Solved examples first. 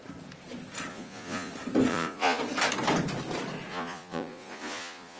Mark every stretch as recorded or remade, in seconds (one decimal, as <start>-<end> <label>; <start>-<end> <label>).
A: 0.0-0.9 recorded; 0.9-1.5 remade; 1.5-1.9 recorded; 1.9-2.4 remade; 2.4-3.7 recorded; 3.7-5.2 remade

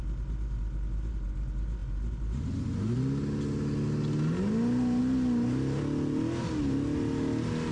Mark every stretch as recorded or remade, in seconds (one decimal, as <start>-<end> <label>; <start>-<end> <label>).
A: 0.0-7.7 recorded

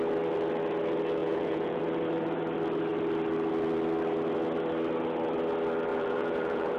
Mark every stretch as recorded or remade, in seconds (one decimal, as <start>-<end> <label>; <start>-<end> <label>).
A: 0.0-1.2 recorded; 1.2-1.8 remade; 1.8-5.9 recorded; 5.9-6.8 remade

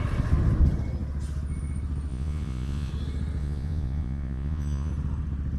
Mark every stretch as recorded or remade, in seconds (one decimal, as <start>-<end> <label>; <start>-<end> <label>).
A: 0.0-2.1 recorded; 2.1-2.9 remade; 2.9-3.4 recorded; 3.4-4.9 remade; 4.9-5.6 recorded

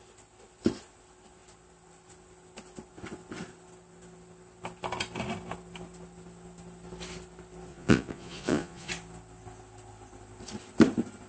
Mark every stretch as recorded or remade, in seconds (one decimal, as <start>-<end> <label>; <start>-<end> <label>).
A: 0.0-7.7 recorded; 7.7-8.9 remade; 8.9-11.3 recorded

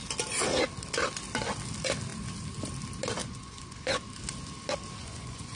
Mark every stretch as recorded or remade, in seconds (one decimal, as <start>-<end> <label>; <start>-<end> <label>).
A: 0.0-3.2 recorded; 3.2-4.0 remade; 4.0-5.0 recorded; 5.0-5.6 remade

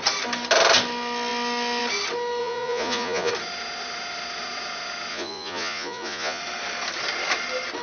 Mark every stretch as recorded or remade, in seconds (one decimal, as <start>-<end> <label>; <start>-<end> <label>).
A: 0.0-2.4 recorded; 2.4-3.3 remade; 3.3-5.1 recorded; 5.1-6.4 remade; 6.4-7.8 recorded

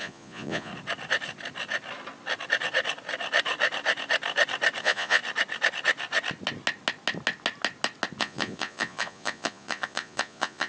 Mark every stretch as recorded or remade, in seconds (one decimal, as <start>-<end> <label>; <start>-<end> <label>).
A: 0.0-0.7 remade; 0.7-4.8 recorded; 4.8-5.2 remade; 5.2-8.2 recorded; 8.2-10.7 remade